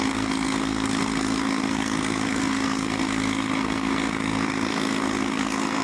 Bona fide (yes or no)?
no